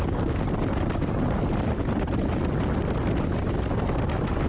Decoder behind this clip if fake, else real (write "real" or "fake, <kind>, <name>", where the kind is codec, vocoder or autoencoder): real